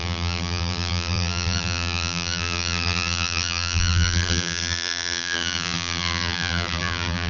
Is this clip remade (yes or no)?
yes